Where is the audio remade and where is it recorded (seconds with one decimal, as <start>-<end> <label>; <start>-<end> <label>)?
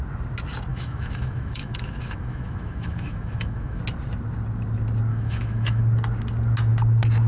0.0-0.7 recorded; 0.7-3.8 remade; 3.8-5.1 recorded; 5.1-5.8 remade; 5.8-7.3 recorded